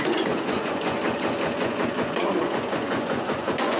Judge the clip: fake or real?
fake